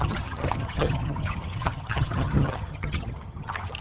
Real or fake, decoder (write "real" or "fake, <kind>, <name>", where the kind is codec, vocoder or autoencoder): fake, vocoder, HiFi-GAN